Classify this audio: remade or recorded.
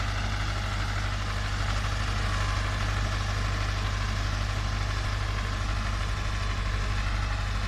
recorded